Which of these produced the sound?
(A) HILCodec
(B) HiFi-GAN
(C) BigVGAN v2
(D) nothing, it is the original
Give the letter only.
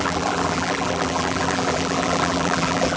C